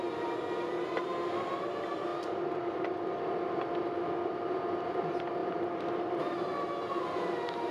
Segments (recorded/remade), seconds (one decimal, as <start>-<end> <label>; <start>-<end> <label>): 0.0-7.7 recorded